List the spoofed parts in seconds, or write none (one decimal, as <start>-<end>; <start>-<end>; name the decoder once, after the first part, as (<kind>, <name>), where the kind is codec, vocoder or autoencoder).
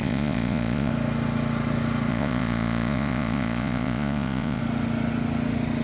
0.0-0.9 (vocoder, Vocos); 2.1-4.6